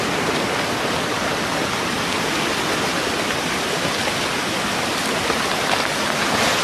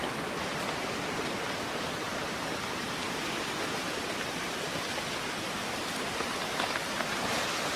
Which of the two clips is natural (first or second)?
first